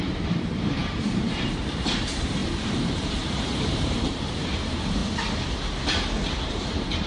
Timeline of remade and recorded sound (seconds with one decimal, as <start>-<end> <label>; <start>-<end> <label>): 0.0-5.0 remade; 5.0-6.5 recorded; 6.5-7.1 remade